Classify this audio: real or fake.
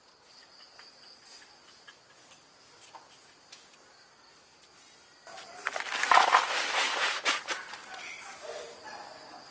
real